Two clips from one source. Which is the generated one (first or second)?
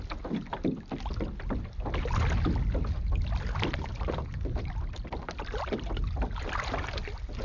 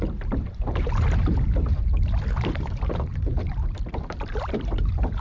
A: second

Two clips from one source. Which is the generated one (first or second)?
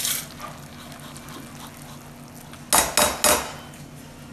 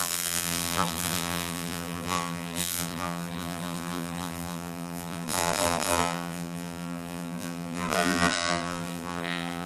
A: second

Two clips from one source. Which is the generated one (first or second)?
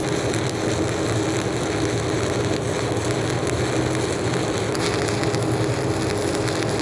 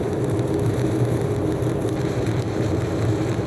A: second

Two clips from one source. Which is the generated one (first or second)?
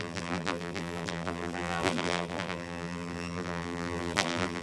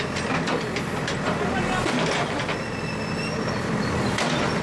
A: first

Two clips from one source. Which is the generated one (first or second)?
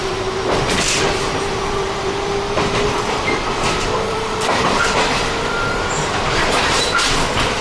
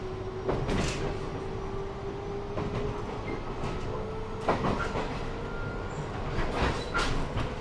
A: first